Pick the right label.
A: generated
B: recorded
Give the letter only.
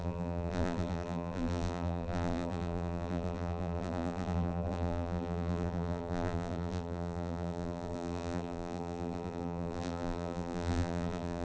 A